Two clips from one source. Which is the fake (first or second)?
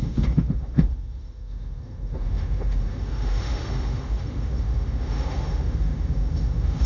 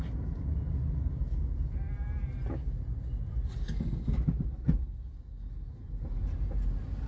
first